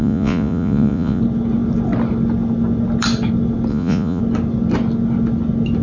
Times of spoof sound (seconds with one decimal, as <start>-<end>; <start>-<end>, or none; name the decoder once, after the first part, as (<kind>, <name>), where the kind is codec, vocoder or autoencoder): 0.0-1.2 (vocoder, Vocos); 3.7-4.2